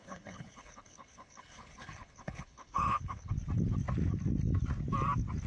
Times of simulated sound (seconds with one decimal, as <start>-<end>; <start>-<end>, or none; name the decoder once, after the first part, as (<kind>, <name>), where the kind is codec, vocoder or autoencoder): 0.0-3.3 (codec, HILCodec)